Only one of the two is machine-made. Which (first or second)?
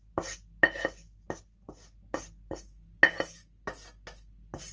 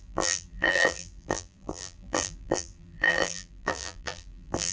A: second